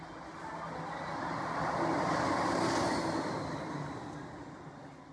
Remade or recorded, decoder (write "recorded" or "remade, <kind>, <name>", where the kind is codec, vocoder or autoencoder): recorded